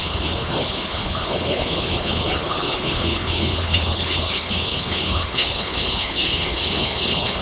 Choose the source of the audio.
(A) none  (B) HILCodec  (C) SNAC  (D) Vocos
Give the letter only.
B